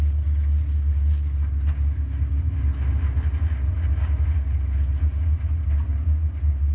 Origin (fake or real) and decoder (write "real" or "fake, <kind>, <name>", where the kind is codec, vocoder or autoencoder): real